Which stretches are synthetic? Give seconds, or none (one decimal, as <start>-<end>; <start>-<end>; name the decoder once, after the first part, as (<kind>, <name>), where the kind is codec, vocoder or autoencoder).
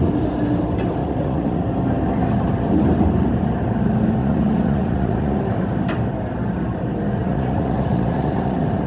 1.0-1.6 (vocoder, Vocos); 4.2-5.4; 7.2-8.9